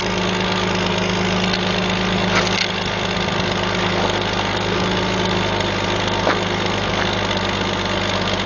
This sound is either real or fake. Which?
real